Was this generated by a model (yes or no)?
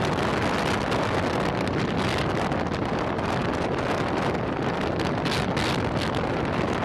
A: no